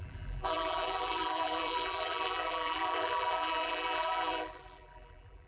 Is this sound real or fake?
fake